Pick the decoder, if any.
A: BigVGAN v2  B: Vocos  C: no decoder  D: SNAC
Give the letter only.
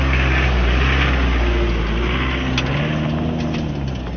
C